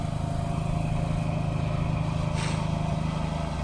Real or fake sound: real